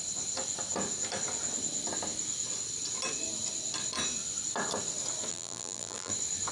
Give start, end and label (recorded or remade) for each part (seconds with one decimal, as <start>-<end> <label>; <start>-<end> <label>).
0.0-5.3 recorded; 5.3-6.1 remade; 6.1-6.5 recorded